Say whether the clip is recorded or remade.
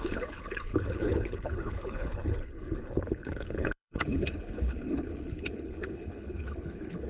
remade